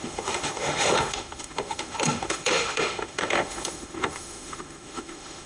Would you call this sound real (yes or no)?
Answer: no